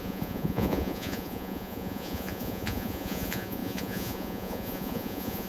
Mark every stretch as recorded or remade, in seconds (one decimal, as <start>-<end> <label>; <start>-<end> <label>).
0.0-5.5 remade